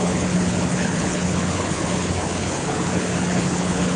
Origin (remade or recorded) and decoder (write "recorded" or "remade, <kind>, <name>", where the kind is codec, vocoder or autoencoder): remade, codec, HILCodec